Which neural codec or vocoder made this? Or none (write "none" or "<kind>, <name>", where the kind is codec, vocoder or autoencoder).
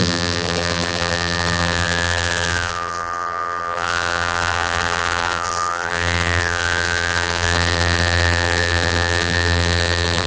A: vocoder, BigVGAN v2